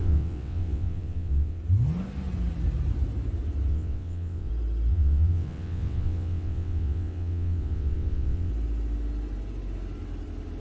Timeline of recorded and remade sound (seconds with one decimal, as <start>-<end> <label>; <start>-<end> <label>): 0.0-1.6 remade; 1.6-3.7 recorded; 3.7-4.5 remade; 4.5-4.9 recorded; 4.9-8.5 remade; 8.5-10.6 recorded